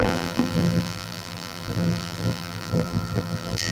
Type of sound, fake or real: fake